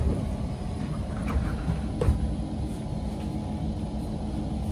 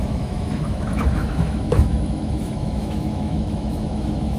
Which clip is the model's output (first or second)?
second